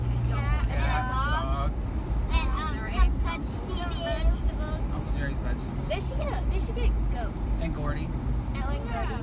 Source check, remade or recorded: recorded